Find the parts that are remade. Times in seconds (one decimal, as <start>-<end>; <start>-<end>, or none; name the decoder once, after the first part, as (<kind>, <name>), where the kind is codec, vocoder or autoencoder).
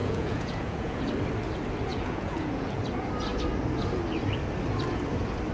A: 0.0-1.0 (vocoder, Vocos); 1.9-2.8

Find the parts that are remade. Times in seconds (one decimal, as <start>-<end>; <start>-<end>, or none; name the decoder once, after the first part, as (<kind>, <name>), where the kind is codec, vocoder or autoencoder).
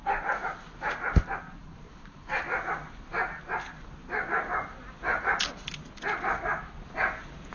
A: 1.6-2.6 (vocoder, BigVGAN v2)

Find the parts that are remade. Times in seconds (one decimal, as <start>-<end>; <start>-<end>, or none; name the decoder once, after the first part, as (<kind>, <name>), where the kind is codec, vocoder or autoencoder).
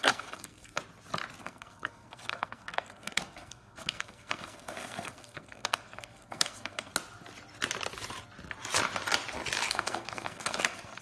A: 0.0-0.8 (codec, SNAC); 1.4-6.9; 9.7-11.0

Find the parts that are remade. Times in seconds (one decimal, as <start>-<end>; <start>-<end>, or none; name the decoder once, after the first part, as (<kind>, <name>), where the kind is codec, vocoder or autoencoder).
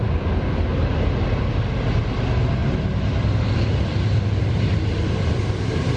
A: none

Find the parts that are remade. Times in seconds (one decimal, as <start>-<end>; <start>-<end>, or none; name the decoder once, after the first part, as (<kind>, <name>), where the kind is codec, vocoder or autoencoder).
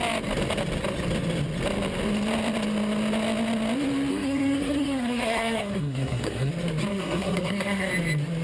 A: 4.1-6.5 (codec, SNAC); 6.9-7.9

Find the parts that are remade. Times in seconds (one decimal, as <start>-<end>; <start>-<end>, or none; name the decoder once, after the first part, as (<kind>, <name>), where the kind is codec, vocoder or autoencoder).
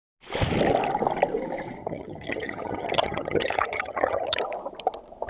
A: 1.8-4.4 (vocoder, HiFi-GAN)